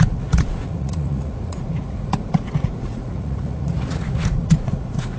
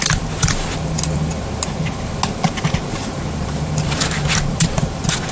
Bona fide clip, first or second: second